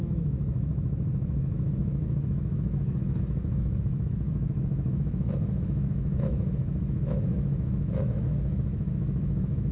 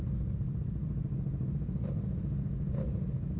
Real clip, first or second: second